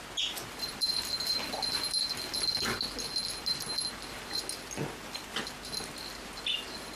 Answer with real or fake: real